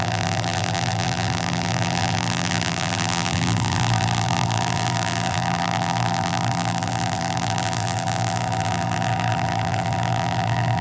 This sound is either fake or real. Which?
fake